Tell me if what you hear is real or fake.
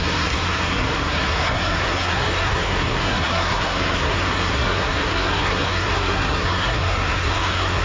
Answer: fake